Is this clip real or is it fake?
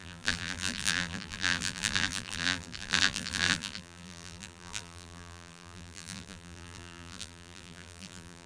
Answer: fake